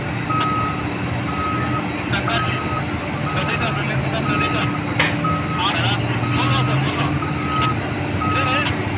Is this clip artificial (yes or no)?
no